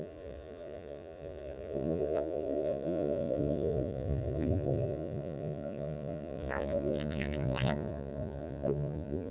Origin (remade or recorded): remade